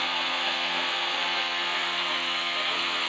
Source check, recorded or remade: remade